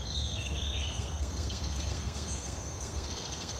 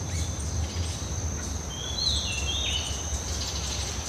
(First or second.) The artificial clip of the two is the first